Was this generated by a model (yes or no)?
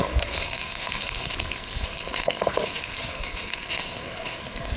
yes